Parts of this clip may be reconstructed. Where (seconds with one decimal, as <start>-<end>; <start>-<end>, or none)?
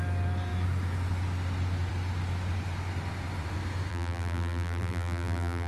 3.9-5.7